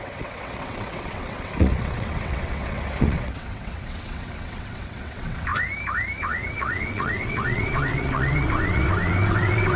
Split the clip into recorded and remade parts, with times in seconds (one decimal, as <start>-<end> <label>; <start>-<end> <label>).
0.0-5.5 remade; 5.5-6.2 recorded; 6.2-9.8 remade